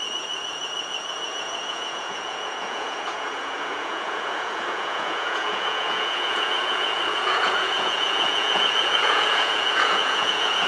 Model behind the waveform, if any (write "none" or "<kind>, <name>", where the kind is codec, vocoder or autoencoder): vocoder, Vocos